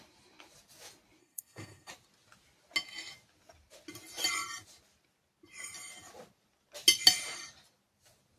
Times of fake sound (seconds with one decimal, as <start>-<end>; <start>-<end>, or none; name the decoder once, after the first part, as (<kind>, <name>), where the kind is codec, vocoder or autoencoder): 1.2-1.9 (codec, SNAC)